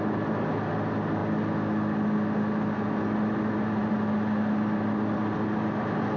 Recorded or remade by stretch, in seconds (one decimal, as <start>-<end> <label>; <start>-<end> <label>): 0.0-6.2 recorded